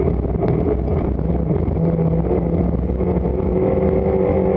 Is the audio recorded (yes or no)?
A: yes